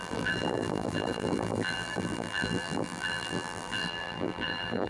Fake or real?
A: fake